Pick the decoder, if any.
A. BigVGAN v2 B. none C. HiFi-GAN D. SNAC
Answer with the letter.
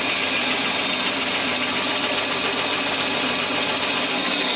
B